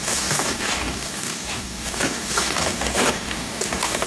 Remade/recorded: remade